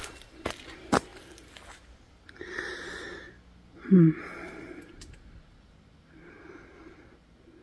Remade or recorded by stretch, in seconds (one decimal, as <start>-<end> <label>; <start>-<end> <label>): 0.0-7.6 recorded

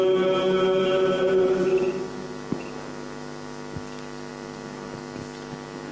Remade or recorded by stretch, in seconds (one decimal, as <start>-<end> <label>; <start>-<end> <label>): 0.0-5.9 recorded

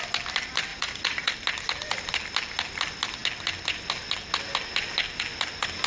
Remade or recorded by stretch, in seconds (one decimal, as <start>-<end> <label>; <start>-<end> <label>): 0.0-0.7 recorded; 0.7-1.3 remade; 1.3-5.9 recorded

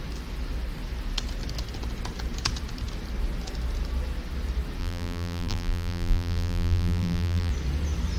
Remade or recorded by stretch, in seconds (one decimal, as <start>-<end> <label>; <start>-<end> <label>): 0.0-4.8 recorded; 4.8-7.5 remade; 7.5-8.2 recorded

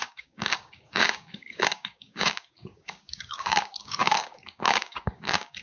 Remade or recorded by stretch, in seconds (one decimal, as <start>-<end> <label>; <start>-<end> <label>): 0.0-5.6 remade

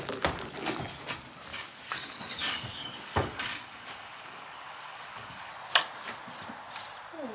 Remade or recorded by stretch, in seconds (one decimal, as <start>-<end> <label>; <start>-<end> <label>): 0.0-1.5 recorded; 1.5-5.5 remade; 5.5-7.3 recorded

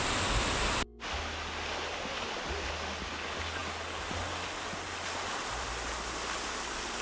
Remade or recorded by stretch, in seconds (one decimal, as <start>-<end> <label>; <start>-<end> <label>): 0.0-7.0 recorded

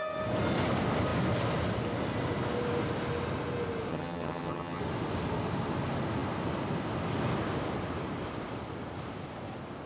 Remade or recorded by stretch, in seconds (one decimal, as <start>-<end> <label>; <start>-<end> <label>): 0.0-3.9 recorded; 3.9-4.8 remade; 4.8-9.9 recorded